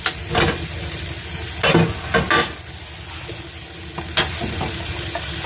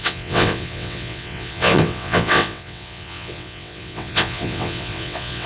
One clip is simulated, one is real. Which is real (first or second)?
first